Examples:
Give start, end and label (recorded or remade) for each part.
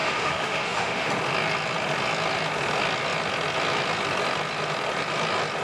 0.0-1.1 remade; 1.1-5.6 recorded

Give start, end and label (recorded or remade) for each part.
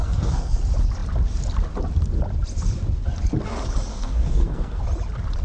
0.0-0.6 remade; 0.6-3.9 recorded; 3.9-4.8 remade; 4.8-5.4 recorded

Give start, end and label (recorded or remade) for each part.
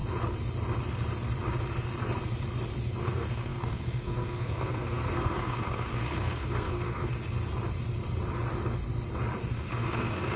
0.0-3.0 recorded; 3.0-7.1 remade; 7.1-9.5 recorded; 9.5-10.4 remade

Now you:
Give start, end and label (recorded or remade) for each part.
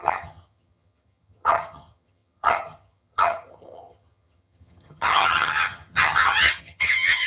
0.0-7.3 remade